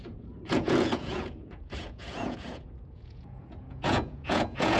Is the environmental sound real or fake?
fake